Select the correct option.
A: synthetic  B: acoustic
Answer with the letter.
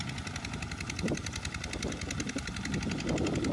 B